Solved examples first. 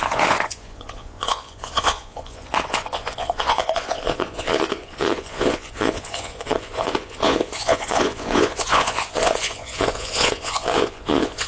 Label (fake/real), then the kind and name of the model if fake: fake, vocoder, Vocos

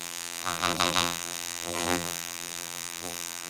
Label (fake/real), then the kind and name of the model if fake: fake, vocoder, BigVGAN v2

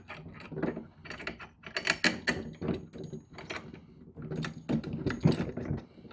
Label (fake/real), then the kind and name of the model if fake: real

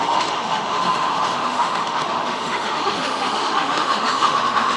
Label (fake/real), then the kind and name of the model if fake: fake, autoencoder, DAC-VAE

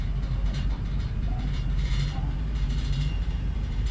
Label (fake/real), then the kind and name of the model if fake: fake, vocoder, BigVGAN v2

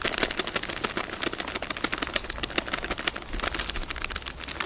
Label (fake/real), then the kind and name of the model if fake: real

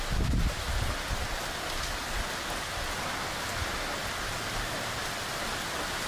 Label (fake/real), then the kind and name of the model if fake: real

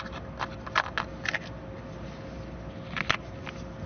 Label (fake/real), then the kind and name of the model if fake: real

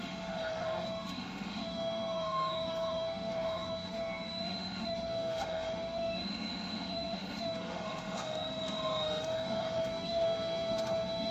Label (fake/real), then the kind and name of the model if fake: fake, autoencoder, DAC-VAE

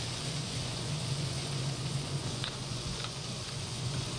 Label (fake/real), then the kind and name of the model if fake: fake, vocoder, Vocos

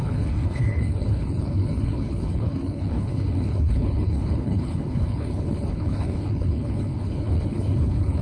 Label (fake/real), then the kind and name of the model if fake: fake, codec, HILCodec